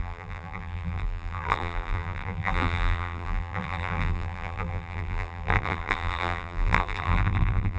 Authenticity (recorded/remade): remade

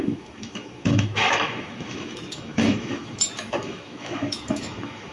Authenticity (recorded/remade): remade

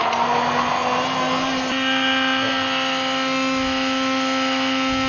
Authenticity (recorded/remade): recorded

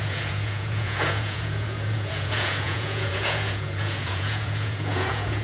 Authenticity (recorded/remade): remade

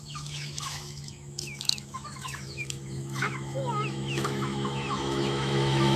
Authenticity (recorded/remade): remade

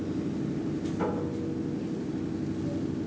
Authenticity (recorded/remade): recorded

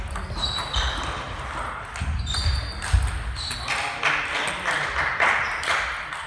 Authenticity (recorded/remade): recorded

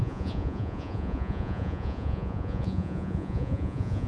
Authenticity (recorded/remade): remade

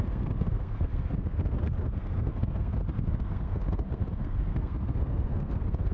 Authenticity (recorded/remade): remade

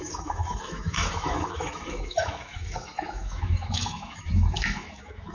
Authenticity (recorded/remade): remade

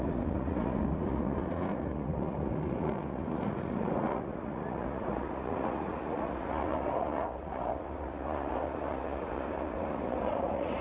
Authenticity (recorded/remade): remade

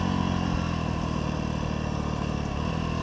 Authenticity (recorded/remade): recorded